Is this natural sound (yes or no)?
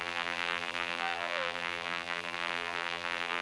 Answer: no